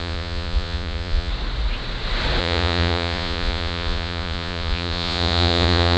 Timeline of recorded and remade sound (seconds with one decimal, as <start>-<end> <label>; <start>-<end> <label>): 0.0-1.3 remade; 1.3-2.4 recorded; 2.4-6.0 remade